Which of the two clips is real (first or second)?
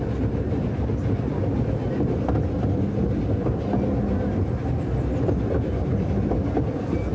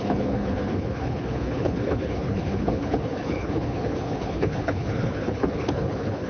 first